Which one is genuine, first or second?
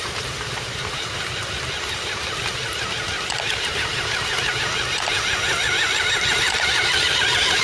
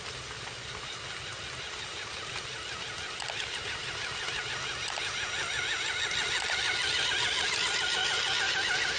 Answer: second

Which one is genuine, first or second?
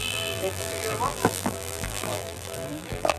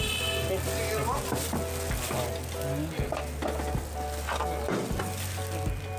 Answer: second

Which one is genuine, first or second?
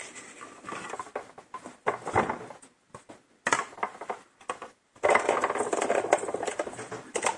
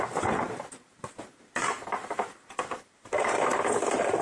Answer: first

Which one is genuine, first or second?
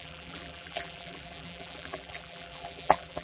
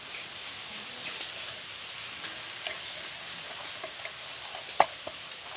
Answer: second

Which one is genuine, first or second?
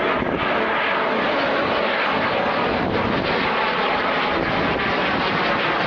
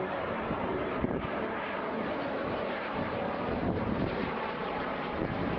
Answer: first